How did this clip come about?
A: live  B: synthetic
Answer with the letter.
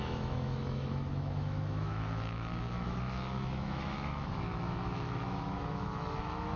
B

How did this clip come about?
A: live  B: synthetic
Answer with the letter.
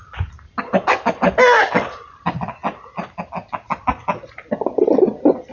A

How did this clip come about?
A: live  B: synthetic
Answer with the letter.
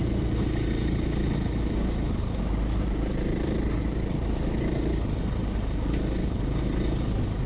A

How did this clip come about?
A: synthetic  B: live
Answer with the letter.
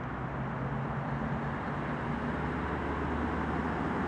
B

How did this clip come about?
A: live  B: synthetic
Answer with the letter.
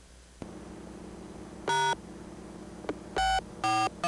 A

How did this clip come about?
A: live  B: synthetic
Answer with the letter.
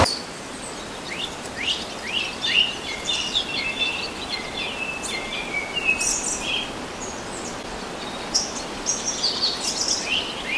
A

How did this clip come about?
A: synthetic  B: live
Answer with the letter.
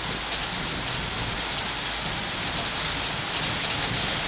B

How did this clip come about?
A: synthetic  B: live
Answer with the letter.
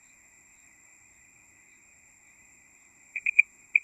A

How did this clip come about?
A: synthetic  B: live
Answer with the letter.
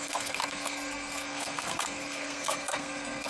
A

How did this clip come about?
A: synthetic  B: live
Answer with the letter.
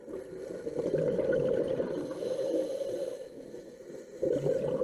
B